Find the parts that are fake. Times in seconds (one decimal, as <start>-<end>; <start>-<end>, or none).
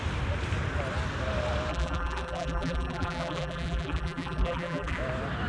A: 1.7-5.0